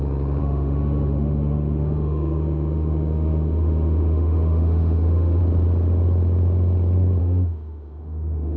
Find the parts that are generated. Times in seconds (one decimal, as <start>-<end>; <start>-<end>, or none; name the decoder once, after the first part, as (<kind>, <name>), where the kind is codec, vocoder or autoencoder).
0.4-5.4 (autoencoder, DAC-VAE); 7.2-8.6